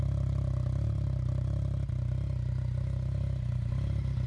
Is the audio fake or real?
real